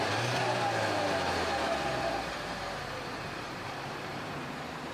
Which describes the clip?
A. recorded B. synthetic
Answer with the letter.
B